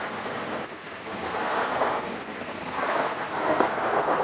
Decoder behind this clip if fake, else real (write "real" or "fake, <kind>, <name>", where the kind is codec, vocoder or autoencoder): fake, codec, SNAC